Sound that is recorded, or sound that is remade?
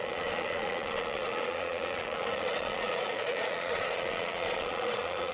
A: remade